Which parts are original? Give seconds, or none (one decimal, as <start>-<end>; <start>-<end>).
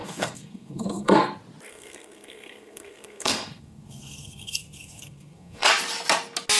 1.2-1.7; 5.7-6.6